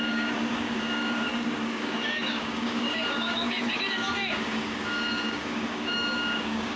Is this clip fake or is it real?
fake